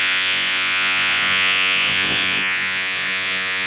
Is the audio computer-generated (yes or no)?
yes